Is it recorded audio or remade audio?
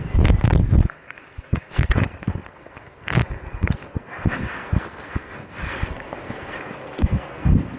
remade